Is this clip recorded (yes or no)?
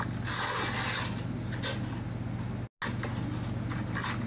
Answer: yes